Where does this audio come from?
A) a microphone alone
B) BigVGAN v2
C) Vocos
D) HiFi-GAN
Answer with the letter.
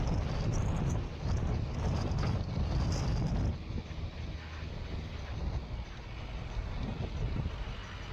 A